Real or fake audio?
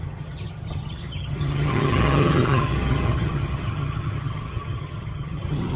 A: fake